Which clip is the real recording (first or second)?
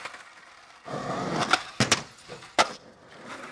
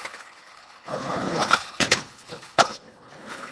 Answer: first